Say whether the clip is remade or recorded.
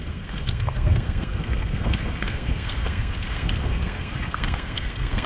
remade